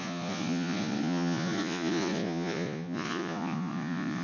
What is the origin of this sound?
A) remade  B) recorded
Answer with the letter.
A